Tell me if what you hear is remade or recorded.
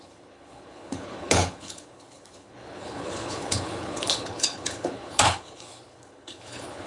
remade